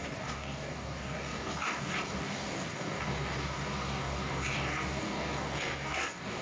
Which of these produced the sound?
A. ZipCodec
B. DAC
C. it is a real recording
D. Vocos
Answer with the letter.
B